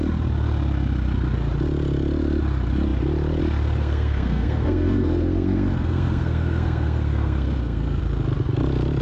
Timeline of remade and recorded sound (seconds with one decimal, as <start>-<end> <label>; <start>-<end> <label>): 0.0-3.8 recorded; 3.8-8.0 remade; 8.0-9.0 recorded